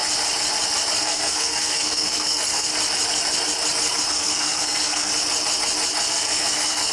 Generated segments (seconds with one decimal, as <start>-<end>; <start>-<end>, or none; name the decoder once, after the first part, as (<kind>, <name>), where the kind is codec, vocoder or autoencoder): 1.0-2.7 (codec, SNAC); 4.1-5.1; 6.1-6.9